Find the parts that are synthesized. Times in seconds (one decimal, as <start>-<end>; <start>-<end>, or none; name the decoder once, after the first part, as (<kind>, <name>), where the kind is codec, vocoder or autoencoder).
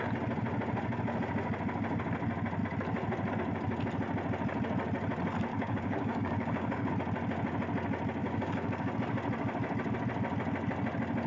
5.5-6.9 (codec, DAC); 8.2-8.9